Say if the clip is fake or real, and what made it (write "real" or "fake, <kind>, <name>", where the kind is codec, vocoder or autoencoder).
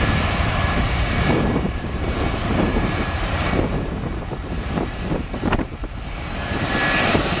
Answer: fake, vocoder, BigVGAN v2